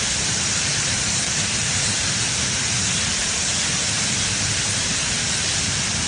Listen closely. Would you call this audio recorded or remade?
remade